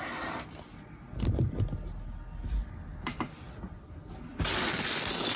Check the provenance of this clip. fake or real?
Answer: real